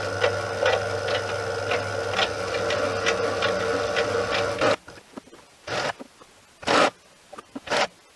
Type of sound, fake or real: real